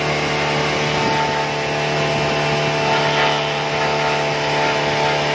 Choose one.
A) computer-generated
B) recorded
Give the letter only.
B